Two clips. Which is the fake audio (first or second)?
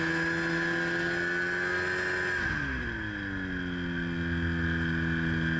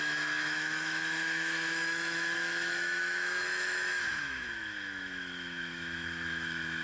second